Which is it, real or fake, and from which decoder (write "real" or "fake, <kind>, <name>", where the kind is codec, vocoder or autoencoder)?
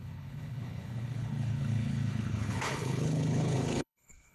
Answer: fake, codec, HILCodec